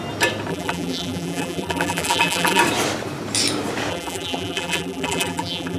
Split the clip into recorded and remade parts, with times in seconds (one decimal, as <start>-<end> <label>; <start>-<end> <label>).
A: 0.0-0.5 recorded; 0.5-2.6 remade; 2.6-3.9 recorded; 3.9-5.8 remade